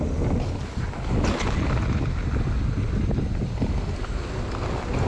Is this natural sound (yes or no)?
yes